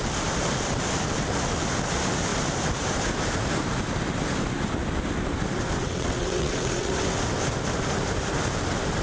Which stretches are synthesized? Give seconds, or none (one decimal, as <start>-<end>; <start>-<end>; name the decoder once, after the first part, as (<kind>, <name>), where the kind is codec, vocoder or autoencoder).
5.8-6.9 (vocoder, WaveNeXt)

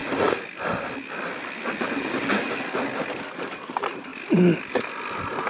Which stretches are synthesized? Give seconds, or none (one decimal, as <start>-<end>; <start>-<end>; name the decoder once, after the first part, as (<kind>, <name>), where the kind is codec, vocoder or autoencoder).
3.3-4.1 (vocoder, BigVGAN v2); 4.7-5.5

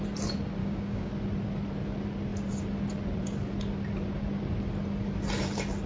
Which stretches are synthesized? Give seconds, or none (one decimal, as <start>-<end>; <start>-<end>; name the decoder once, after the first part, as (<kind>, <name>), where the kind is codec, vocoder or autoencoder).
0.6-1.1 (codec, DAC)

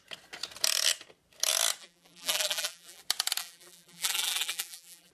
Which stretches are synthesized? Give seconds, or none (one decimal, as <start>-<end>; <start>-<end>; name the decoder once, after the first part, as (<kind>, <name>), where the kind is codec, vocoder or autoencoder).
1.8-3.0 (vocoder, BigVGAN v2); 3.4-5.1

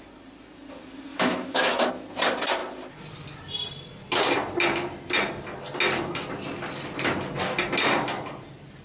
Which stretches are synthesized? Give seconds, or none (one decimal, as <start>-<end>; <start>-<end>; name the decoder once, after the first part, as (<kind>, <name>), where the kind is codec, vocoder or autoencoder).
1.1-1.9 (autoencoder, DAC-VAE)

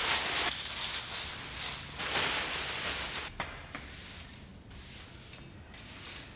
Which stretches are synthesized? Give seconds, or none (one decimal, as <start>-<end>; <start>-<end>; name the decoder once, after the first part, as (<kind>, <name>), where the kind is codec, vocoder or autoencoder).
none